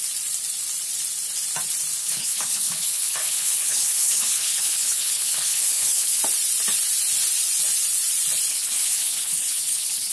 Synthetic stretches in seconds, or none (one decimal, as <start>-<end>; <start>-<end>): 2.0-6.2; 8.5-10.1